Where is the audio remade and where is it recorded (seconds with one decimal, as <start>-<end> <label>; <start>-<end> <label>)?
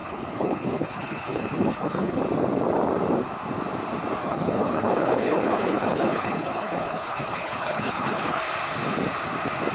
0.0-2.2 remade; 2.2-4.2 recorded; 4.2-8.4 remade; 8.4-9.7 recorded